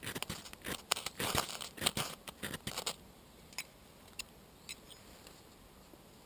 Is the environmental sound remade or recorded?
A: recorded